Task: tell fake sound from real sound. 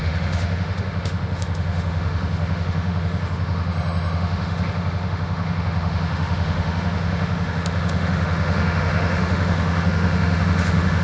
fake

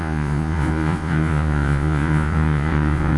fake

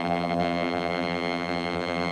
fake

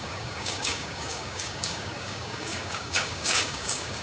fake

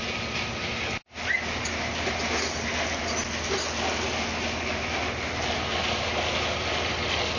real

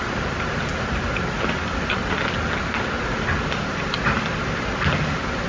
real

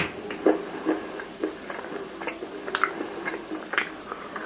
real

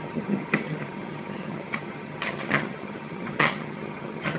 fake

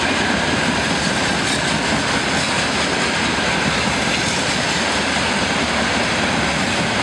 real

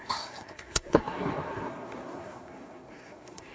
fake